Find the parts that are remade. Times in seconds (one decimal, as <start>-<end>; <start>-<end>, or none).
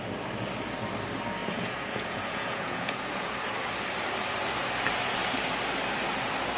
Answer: 1.4-3.3